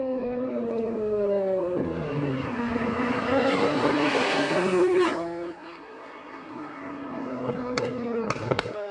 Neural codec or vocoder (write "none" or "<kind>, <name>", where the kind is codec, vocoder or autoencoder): codec, SNAC